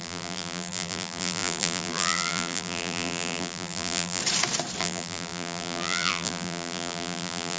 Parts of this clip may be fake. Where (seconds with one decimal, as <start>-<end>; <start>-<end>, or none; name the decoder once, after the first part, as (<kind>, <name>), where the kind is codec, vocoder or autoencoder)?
0.0-4.2 (vocoder, BigVGAN v2); 4.8-7.6